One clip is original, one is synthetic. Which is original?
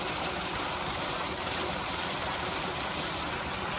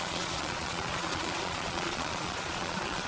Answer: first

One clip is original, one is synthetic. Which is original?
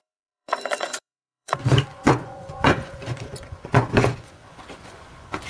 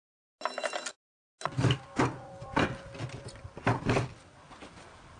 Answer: second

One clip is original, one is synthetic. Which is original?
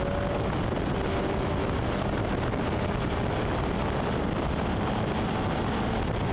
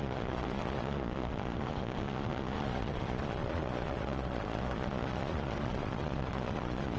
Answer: first